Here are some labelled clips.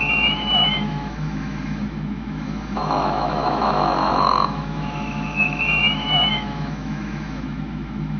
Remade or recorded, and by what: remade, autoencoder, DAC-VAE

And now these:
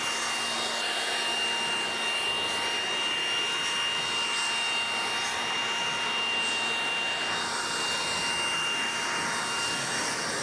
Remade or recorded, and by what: recorded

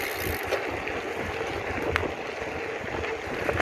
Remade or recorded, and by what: recorded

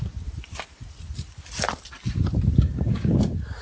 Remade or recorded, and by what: recorded